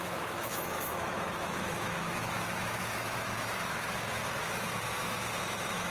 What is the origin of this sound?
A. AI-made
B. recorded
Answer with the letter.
A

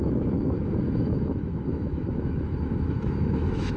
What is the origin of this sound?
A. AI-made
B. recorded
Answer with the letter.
A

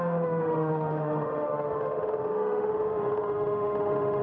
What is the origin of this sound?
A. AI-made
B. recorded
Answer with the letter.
A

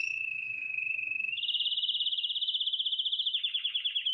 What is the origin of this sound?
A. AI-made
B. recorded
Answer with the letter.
A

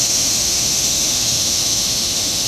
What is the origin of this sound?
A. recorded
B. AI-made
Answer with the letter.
B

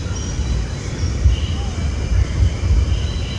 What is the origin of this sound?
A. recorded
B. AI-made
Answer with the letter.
A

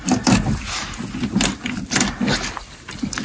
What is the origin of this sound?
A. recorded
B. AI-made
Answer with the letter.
A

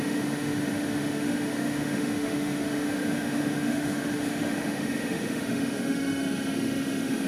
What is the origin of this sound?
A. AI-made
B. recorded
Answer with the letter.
A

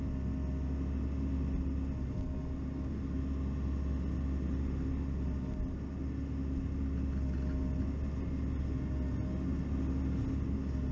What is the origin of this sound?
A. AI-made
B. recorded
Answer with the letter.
B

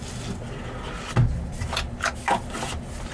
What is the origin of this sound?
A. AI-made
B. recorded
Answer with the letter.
B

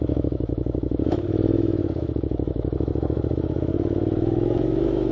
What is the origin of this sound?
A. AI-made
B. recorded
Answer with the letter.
A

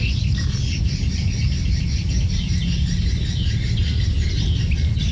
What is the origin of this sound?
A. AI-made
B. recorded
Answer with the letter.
B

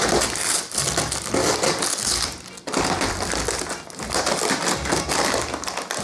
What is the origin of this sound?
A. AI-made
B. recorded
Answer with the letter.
B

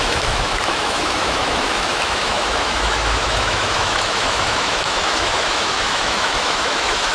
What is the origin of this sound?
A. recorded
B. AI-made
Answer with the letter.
B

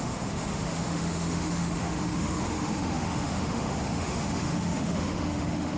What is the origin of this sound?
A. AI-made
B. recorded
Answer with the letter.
A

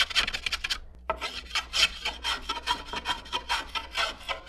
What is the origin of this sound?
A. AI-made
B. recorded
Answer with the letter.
B